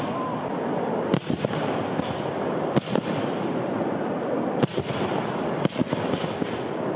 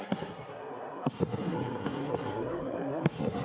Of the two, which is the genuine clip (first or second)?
first